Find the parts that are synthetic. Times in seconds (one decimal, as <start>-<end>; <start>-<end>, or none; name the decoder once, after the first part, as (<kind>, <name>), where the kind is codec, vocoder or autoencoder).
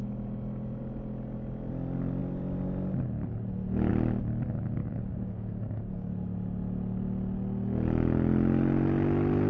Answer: 4.8-6.1 (codec, DAC)